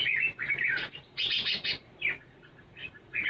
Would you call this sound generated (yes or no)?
yes